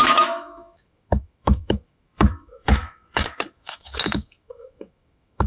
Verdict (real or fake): fake